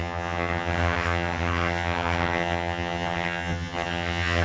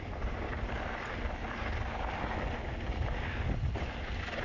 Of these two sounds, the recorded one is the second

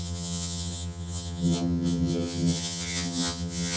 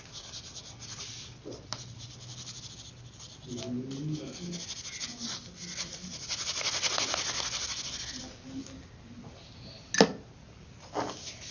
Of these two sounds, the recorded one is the second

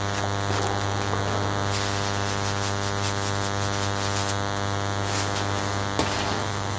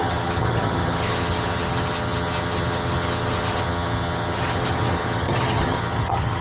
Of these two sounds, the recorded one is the first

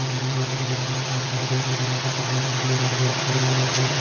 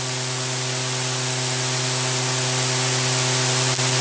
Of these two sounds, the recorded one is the second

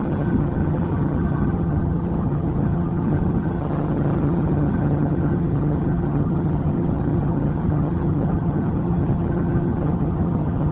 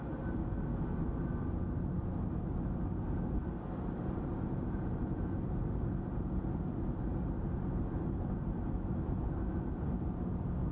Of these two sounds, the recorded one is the second